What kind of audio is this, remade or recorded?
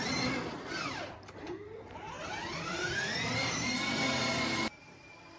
remade